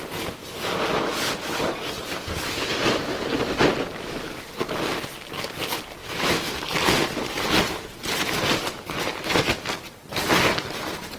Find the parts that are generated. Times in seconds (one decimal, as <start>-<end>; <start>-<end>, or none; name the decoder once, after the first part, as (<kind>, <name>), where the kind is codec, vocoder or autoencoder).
6.0-6.6 (autoencoder, DAC-VAE)